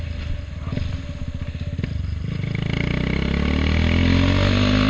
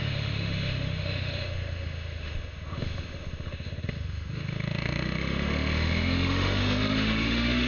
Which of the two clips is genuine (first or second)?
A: first